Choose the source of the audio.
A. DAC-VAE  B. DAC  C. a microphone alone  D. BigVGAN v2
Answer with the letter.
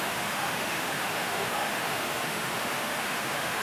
A